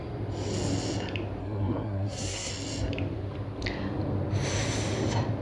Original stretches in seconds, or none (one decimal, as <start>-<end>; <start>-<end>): 0.0-1.4; 2.5-5.4

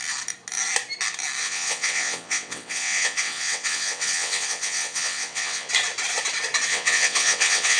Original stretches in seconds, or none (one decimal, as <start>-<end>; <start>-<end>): 0.0-1.4; 5.7-6.7

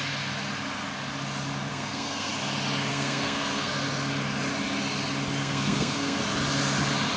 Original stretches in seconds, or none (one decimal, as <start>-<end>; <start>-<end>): 0.0-1.7; 2.3-2.9; 3.7-5.4; 6.2-7.2

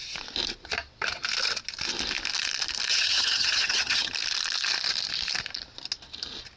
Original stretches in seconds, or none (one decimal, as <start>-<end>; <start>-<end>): 0.0-2.9; 4.1-6.6

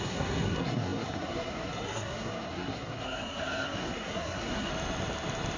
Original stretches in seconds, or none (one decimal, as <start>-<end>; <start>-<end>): 4.7-5.6

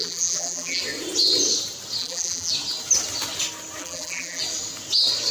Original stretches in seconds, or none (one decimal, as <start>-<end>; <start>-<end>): 0.8-2.0; 2.5-3.8; 4.4-5.3